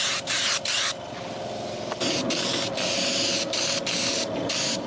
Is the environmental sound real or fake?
real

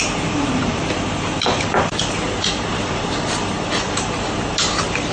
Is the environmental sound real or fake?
fake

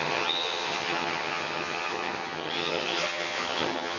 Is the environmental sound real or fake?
fake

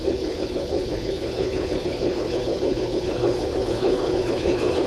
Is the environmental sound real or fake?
fake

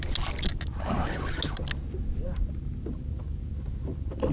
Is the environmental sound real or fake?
real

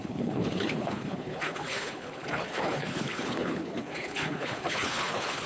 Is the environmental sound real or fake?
fake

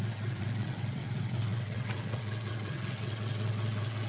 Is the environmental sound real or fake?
fake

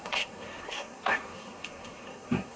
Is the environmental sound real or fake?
fake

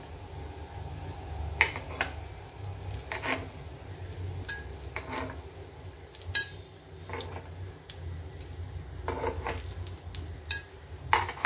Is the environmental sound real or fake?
real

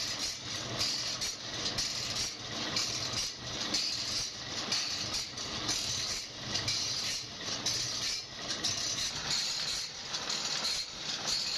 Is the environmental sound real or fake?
real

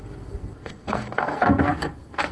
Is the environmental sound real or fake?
fake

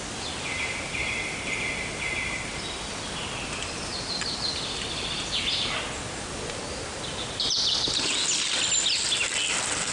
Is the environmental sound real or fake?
real